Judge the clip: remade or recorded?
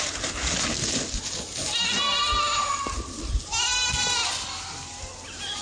recorded